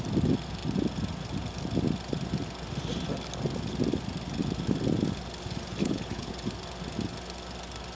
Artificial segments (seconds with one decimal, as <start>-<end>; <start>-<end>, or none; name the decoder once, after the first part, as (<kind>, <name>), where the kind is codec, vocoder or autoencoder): 5.8-6.3 (codec, HILCodec)